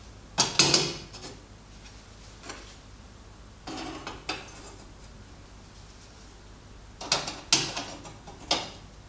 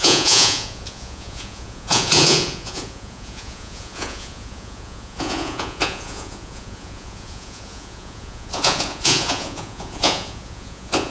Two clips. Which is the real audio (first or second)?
first